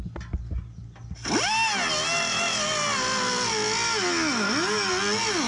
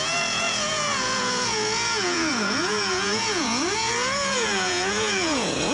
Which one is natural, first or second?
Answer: first